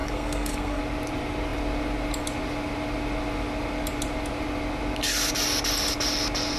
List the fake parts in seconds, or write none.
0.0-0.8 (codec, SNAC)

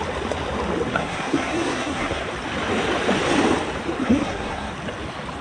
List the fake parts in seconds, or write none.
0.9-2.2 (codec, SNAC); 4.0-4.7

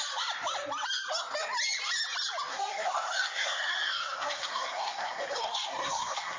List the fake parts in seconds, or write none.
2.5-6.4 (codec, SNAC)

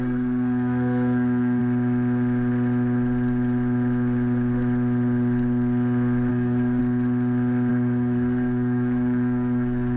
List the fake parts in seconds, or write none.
0.0-1.6 (codec, SNAC); 6.3-6.8; 7.7-10.0

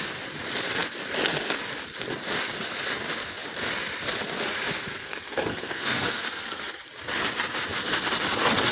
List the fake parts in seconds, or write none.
5.0-6.6 (codec, SNAC)

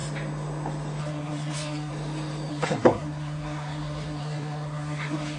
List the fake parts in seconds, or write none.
1.0-1.9 (codec, SNAC); 2.5-5.4